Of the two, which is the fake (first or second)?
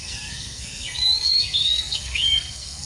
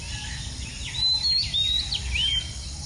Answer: first